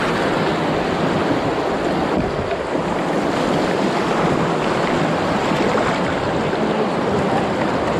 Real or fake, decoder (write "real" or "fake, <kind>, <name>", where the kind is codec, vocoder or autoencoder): real